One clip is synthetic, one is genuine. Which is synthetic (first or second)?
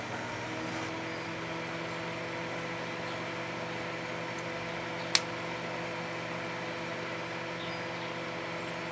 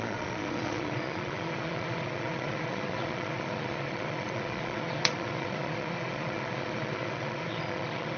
second